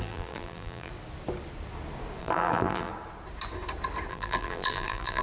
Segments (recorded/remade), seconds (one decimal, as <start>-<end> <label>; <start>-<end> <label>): 0.0-0.9 remade; 0.9-2.2 recorded; 2.2-2.9 remade; 2.9-4.1 recorded; 4.1-5.2 remade